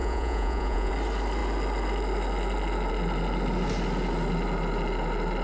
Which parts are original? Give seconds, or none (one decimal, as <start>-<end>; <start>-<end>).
0.9-5.4